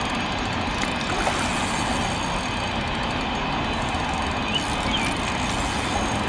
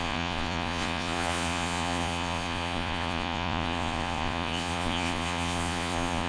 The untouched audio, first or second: first